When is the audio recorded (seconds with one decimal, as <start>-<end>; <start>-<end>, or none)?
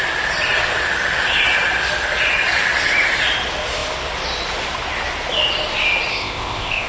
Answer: 0.0-6.1